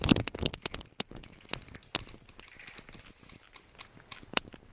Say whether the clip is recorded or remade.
recorded